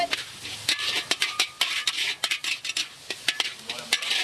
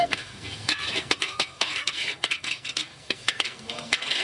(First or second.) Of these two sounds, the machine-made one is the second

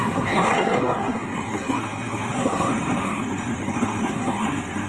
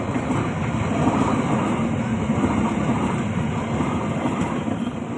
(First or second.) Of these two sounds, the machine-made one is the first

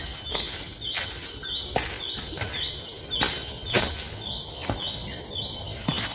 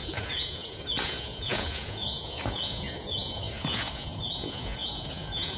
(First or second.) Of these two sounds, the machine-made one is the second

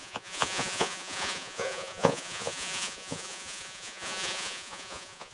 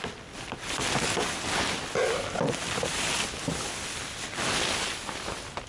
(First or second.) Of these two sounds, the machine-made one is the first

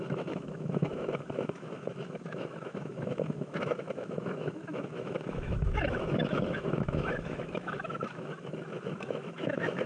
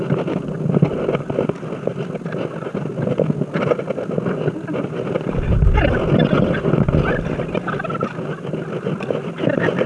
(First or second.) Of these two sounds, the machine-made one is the first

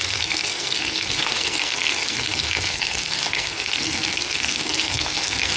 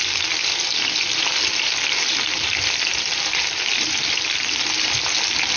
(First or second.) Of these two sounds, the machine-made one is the first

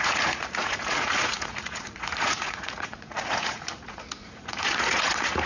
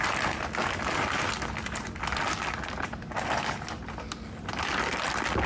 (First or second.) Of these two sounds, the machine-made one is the first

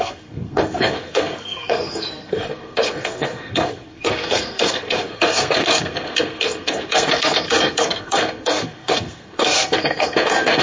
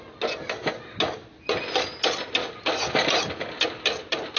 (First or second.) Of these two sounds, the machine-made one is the first